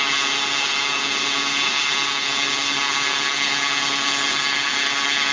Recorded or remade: remade